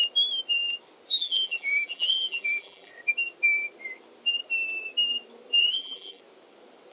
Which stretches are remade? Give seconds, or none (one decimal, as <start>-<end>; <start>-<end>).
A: 1.1-2.9; 5.6-6.2